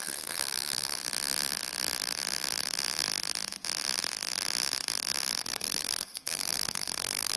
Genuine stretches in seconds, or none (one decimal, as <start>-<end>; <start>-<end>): 1.0-5.4